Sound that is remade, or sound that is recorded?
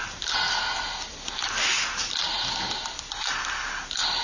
recorded